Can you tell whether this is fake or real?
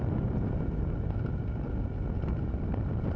real